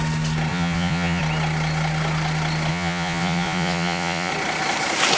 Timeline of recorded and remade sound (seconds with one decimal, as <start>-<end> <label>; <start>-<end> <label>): 0.0-0.5 recorded; 0.5-1.2 remade; 1.2-2.7 recorded; 2.7-4.3 remade; 4.3-5.2 recorded